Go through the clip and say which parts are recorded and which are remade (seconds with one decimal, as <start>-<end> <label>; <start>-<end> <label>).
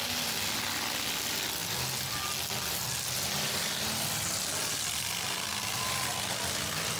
0.0-7.0 recorded